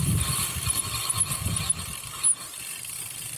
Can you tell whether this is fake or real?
real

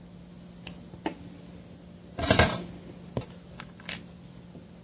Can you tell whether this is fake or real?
real